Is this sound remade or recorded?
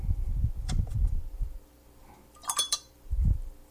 remade